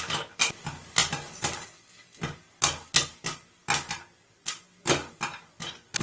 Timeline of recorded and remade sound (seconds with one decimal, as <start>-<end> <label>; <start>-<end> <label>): 0.0-6.0 recorded